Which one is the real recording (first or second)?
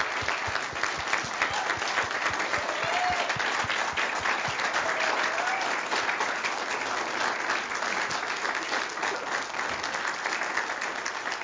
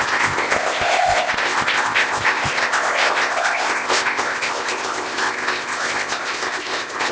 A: first